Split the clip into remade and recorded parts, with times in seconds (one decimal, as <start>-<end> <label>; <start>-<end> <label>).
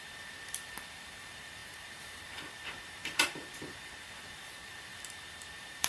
0.0-5.9 remade